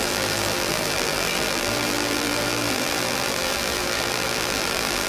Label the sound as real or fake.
fake